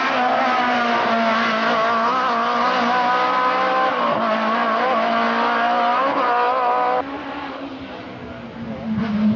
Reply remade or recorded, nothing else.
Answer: recorded